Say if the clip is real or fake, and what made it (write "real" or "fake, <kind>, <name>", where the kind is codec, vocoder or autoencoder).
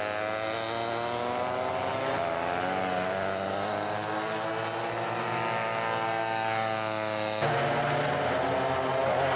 real